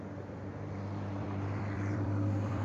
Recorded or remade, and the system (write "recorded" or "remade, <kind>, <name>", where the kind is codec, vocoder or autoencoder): remade, vocoder, BigVGAN v2